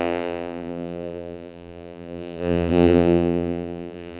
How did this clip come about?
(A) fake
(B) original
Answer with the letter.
A